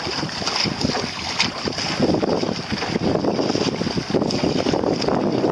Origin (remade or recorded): recorded